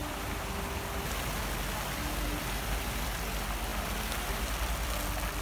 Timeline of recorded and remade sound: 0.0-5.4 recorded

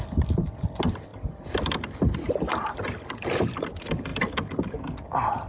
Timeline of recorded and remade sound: 0.0-5.5 recorded

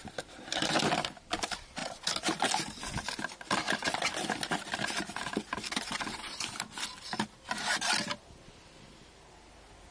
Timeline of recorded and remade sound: 0.0-9.9 recorded

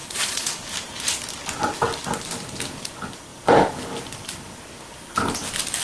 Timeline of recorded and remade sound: 0.0-0.6 remade; 0.6-5.8 recorded

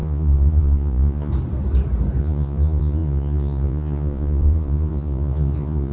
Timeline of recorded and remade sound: 0.0-1.3 remade; 1.3-2.2 recorded; 2.2-5.9 remade

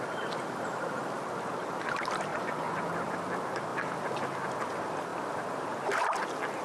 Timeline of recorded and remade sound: 0.0-2.3 recorded; 2.3-2.8 remade; 2.8-6.6 recorded

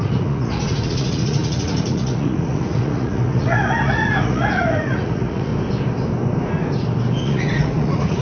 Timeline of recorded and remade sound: 0.0-5.5 remade; 5.5-7.2 recorded; 7.2-8.2 remade

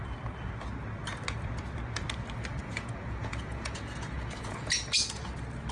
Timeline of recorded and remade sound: 0.0-2.6 recorded; 2.6-5.2 remade; 5.2-5.7 recorded